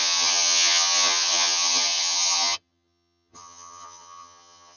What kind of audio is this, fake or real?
fake